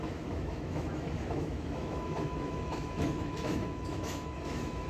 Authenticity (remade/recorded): remade